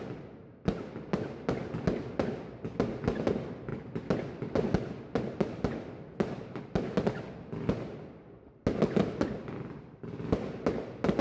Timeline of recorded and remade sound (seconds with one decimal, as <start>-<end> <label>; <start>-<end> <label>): 0.0-11.2 recorded